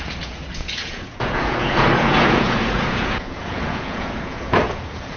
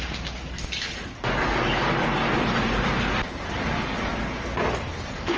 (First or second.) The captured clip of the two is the second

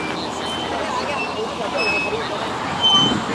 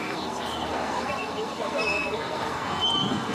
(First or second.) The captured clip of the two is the first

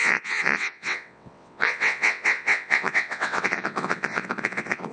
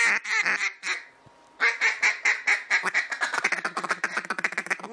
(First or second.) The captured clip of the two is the second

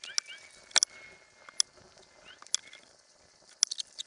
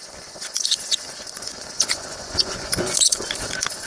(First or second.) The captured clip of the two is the first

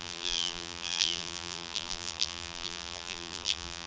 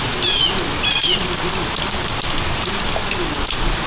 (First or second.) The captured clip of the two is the second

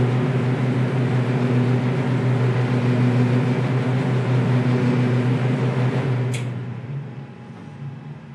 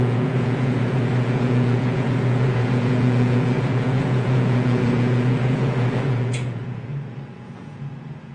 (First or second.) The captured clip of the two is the first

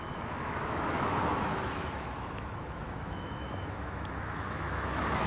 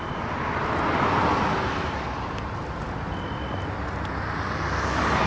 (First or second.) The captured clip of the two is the second